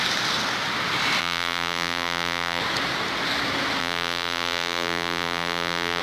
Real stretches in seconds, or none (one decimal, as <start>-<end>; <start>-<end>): 0.0-1.2; 2.6-3.8